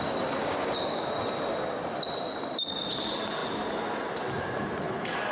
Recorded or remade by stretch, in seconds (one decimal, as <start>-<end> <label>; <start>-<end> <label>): 0.0-0.4 recorded; 0.4-1.1 remade; 1.1-5.3 recorded